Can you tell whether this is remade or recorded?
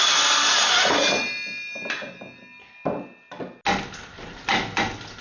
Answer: recorded